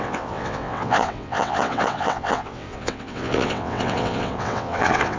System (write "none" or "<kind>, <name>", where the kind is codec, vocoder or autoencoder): vocoder, WaveNeXt